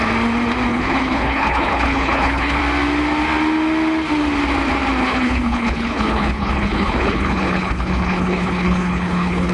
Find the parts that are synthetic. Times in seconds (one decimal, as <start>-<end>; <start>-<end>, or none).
0.7-2.6; 5.0-9.5